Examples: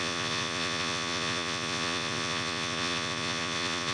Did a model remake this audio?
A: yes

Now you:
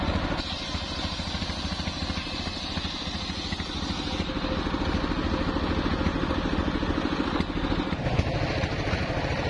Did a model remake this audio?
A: no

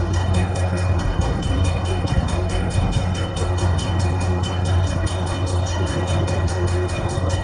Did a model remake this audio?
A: yes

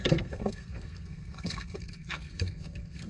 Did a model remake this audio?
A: yes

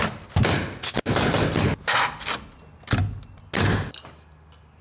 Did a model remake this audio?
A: no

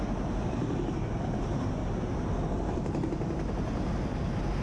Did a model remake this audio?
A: no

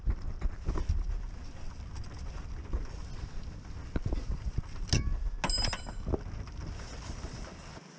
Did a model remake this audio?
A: no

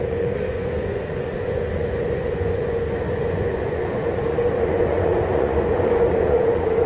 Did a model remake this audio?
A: yes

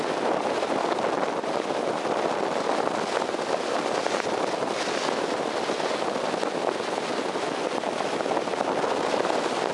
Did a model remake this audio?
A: no